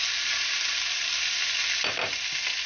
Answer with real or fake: real